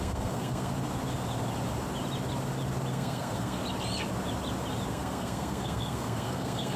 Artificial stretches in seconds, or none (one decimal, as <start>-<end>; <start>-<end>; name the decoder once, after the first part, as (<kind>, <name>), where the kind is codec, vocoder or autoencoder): 0.0-0.7 (codec, SNAC); 2.9-3.6; 4.9-6.8